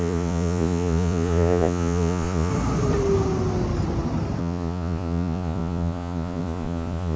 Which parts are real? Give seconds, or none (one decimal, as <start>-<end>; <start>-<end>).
2.5-4.4